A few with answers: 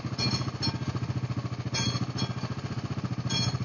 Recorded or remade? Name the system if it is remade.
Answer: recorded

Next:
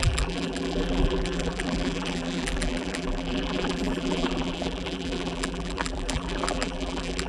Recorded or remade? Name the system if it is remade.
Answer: remade, vocoder, BigVGAN v2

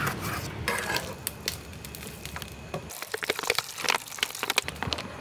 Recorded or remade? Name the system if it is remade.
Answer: recorded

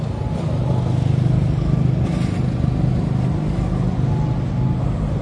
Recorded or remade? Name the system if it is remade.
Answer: recorded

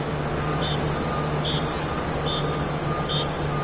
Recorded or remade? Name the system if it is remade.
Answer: recorded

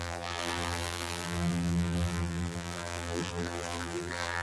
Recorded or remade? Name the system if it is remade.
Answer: remade, vocoder, BigVGAN v2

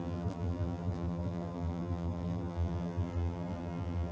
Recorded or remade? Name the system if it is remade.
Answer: remade, vocoder, BigVGAN v2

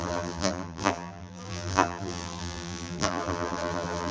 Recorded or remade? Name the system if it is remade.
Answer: remade, vocoder, BigVGAN v2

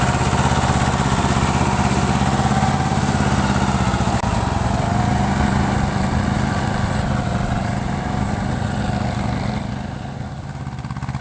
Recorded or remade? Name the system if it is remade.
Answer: recorded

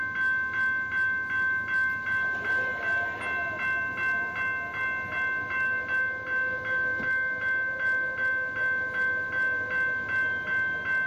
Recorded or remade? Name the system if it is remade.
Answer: recorded